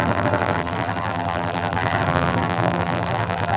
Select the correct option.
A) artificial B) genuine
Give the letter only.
A